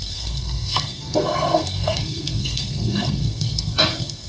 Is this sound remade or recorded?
remade